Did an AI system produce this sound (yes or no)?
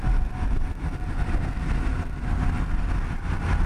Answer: no